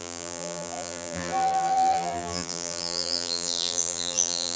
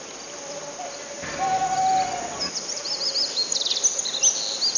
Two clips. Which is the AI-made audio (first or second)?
first